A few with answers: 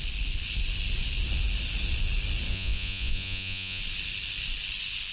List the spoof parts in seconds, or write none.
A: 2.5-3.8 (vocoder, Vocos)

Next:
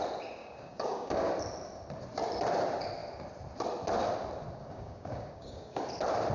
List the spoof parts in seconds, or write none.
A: 0.4-1.3 (codec, DAC); 4.6-5.8

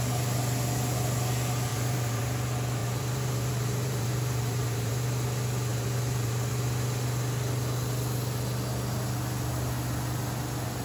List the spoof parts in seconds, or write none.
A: 1.7-2.2 (vocoder, BigVGAN v2); 2.8-4.9; 5.7-6.5

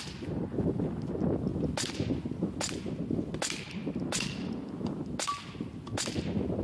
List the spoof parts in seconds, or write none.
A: none

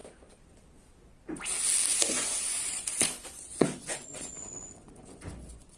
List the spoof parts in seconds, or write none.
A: 1.9-5.8 (vocoder, Vocos)